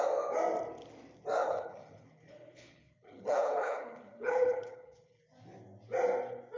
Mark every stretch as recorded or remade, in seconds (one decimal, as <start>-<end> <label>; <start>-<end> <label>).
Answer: 0.0-1.4 recorded; 1.4-5.2 remade; 5.2-6.6 recorded